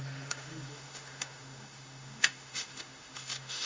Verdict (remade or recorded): remade